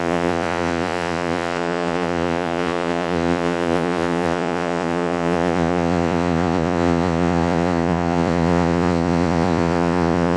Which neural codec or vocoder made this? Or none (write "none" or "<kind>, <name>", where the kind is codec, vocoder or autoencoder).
vocoder, Vocos